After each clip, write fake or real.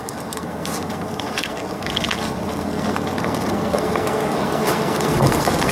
fake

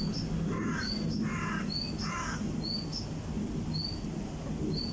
real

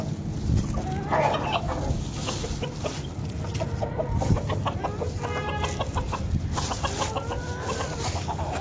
real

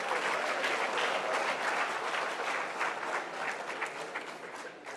real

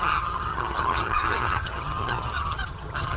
fake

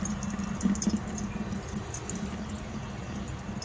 real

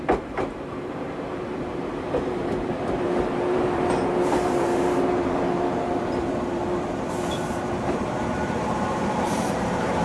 fake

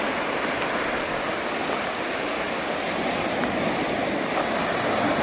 real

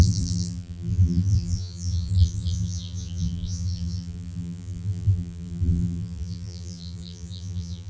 fake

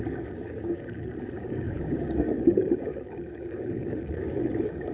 fake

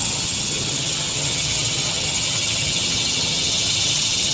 fake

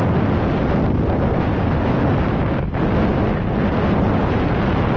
real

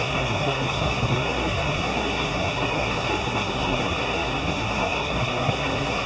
fake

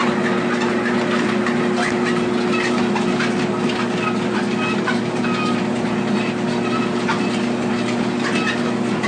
real